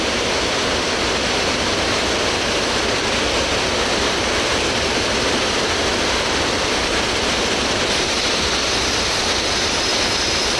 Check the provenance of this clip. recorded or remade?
remade